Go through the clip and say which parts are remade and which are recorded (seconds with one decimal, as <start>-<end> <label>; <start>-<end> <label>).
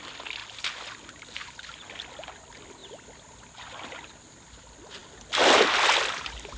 0.0-6.6 recorded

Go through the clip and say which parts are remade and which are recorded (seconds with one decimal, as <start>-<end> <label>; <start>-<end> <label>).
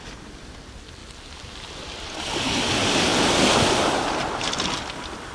0.0-5.3 recorded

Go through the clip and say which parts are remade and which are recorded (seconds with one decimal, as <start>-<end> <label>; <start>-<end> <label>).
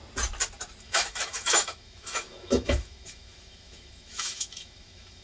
0.0-0.8 recorded; 0.8-5.2 remade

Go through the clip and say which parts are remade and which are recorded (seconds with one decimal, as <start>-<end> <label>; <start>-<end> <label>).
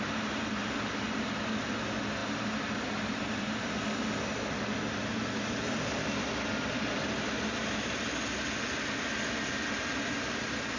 0.0-10.8 recorded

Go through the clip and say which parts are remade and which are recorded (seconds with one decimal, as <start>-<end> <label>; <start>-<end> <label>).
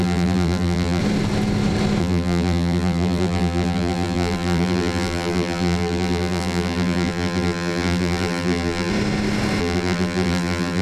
0.0-1.0 remade; 1.0-2.0 recorded; 2.0-8.9 remade; 8.9-9.6 recorded; 9.6-10.8 remade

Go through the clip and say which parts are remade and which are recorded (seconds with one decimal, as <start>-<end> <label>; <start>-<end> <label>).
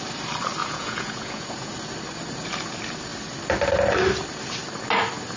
0.0-0.6 recorded; 0.6-1.7 remade; 1.7-5.4 recorded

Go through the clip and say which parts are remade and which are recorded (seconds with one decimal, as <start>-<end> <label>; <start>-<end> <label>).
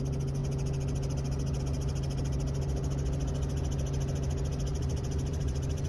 0.0-4.7 recorded; 4.7-5.9 remade